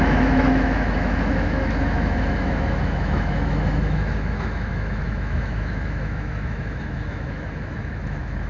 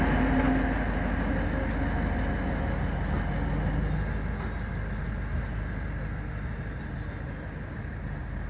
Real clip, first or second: second